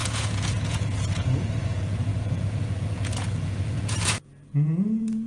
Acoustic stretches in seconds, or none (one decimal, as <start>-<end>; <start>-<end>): none